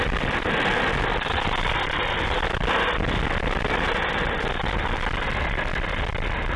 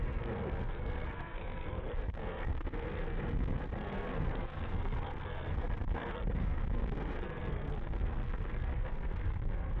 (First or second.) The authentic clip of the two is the first